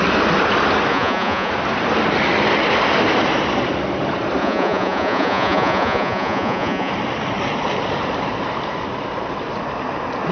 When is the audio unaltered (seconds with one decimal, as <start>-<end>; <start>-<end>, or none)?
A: 0.0-0.9; 1.5-4.4; 6.9-10.3